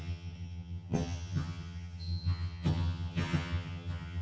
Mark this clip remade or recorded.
remade